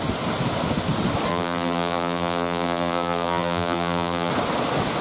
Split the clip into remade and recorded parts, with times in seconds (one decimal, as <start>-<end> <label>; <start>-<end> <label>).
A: 0.0-1.3 recorded; 1.3-4.3 remade; 4.3-5.0 recorded